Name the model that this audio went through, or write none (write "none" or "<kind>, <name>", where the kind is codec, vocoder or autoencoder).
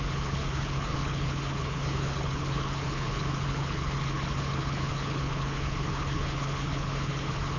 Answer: codec, HILCodec